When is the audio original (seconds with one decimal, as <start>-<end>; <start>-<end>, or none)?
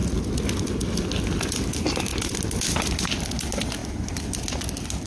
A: 0.0-5.1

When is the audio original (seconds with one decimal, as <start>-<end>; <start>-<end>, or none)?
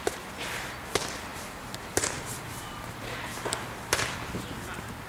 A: 0.0-1.3; 4.4-5.1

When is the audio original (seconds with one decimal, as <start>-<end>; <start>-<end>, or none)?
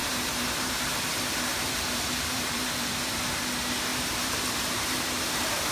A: 0.8-1.5; 3.2-3.9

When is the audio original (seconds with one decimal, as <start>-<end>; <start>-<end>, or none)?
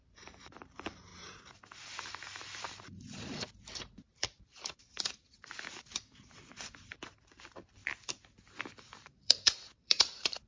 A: 7.8-8.7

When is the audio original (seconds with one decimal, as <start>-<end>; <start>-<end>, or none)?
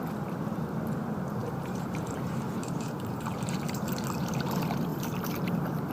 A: 0.0-1.4; 3.9-4.9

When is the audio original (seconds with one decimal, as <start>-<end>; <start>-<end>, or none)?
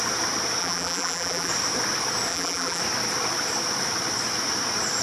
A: 0.0-0.6; 1.5-2.3; 2.8-5.0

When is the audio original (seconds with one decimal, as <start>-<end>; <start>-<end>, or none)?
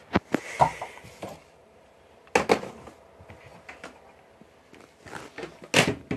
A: 0.0-0.7; 2.1-3.5; 4.0-6.2